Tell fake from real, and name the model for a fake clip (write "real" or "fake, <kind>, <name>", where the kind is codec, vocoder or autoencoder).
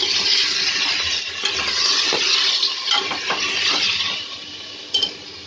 real